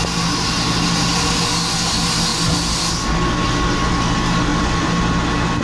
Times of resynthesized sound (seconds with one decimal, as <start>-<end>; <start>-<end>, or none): 4.5-5.0